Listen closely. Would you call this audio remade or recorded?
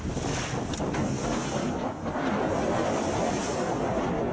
recorded